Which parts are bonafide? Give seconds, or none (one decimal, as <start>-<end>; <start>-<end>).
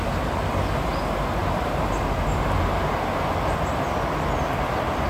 0.0-1.4; 3.3-5.1